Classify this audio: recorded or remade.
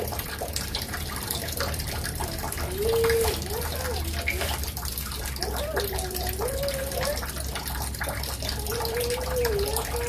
recorded